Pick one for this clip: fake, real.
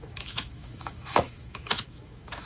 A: fake